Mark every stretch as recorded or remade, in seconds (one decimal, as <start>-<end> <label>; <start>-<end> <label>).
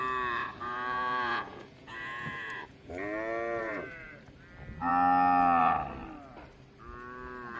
0.0-0.4 recorded; 0.4-2.9 remade; 2.9-3.6 recorded; 3.6-4.2 remade; 4.2-7.6 recorded